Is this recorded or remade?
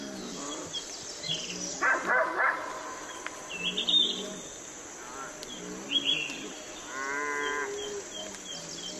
recorded